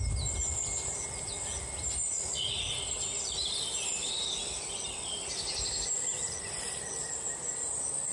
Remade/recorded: recorded